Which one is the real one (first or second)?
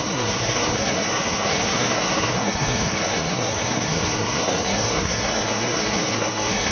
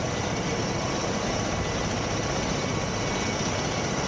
second